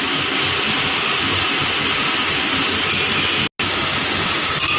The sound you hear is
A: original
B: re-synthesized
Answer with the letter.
A